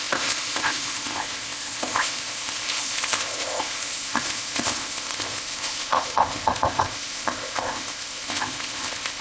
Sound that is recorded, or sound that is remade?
remade